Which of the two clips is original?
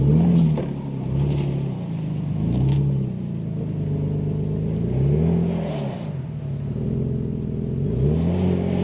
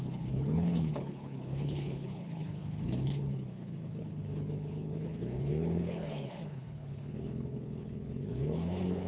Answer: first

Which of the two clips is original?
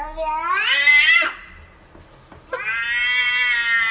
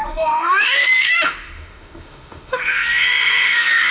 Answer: first